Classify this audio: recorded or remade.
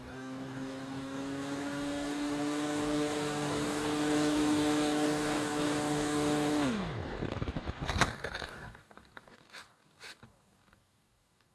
remade